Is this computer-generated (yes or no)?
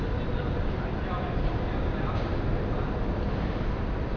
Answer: no